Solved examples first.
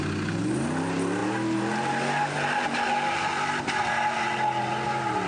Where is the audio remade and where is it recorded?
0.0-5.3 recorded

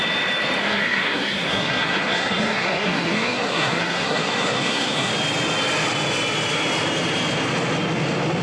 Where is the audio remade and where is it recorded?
0.0-0.6 recorded; 0.6-5.1 remade; 5.1-8.4 recorded

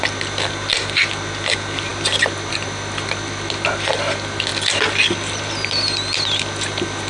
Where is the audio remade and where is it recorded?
0.0-7.1 recorded